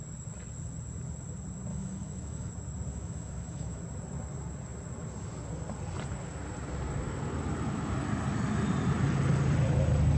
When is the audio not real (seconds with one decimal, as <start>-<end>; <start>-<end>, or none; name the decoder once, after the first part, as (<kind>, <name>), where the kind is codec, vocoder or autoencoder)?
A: 1.7-2.5 (autoencoder, DAC-VAE); 2.9-3.8